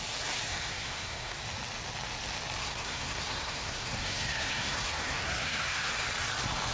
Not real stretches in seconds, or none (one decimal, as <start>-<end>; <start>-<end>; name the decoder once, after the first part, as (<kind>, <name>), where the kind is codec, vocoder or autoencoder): 0.5-1.4 (codec, SNAC); 2.6-5.9